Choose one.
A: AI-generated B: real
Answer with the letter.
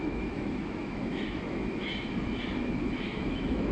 A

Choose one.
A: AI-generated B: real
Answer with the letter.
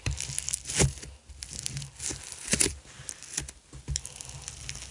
B